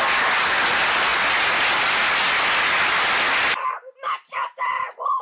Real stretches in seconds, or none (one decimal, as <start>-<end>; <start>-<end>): 0.0-5.2

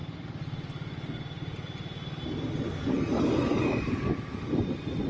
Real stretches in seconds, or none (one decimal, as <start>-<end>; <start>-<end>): 0.0-5.1

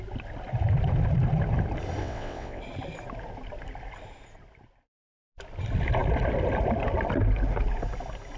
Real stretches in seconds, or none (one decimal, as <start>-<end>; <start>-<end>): 0.0-2.0; 2.6-8.4

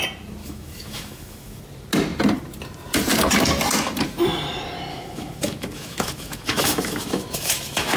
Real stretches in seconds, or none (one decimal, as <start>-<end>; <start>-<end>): 0.0-0.4; 1.6-4.9